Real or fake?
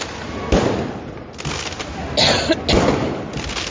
real